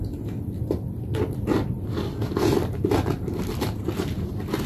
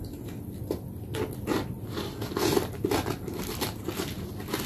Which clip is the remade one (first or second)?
first